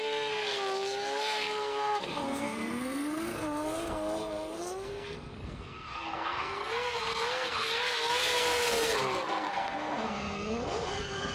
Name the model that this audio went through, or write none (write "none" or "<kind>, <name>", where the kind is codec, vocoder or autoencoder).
codec, SNAC